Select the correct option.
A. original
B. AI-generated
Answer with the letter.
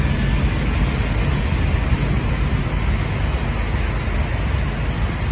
A